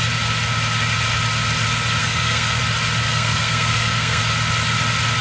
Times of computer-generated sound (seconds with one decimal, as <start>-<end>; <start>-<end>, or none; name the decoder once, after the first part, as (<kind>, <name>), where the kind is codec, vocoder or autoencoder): 2.0-2.6 (codec, SNAC); 3.1-4.2